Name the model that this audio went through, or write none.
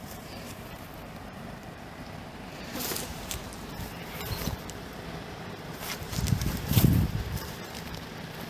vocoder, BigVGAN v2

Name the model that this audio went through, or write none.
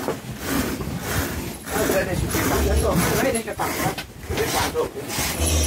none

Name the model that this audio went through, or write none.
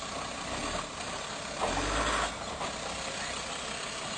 none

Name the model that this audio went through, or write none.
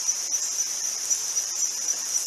vocoder, BigVGAN v2